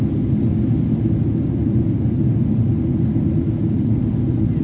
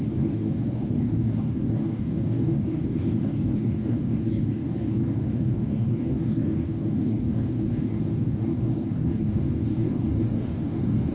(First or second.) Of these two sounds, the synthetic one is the second